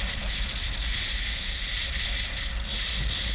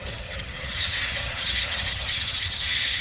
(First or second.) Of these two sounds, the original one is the first